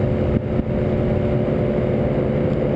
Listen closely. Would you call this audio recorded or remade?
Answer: recorded